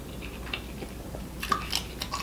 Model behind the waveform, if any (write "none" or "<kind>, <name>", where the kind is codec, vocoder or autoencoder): none